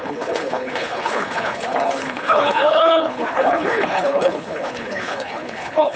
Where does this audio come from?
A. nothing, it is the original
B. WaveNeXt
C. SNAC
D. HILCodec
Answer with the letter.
D